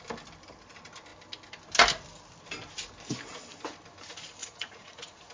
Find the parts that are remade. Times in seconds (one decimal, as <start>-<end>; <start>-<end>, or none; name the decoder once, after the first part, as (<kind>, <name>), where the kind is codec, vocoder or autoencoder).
4.4-5.3 (vocoder, Vocos)